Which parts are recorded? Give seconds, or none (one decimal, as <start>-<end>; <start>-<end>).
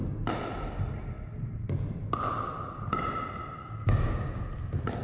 0.0-3.6; 4.4-5.0